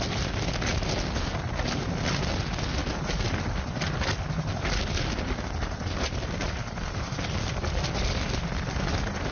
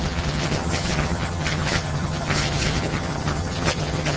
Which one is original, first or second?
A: first